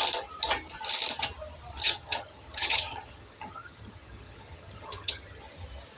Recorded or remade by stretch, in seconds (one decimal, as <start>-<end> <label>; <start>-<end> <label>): 0.0-1.8 recorded; 1.8-5.4 remade; 5.4-6.0 recorded